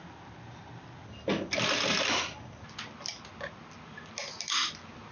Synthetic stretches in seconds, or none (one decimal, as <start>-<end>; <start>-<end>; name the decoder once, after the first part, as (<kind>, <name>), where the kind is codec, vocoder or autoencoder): none